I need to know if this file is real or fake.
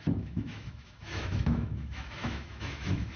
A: fake